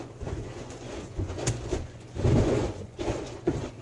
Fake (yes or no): yes